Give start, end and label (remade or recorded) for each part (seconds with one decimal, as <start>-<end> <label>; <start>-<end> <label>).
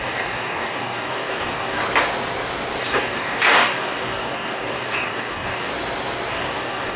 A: 0.0-1.8 remade; 1.8-2.8 recorded; 2.8-5.7 remade; 5.7-6.3 recorded; 6.3-7.0 remade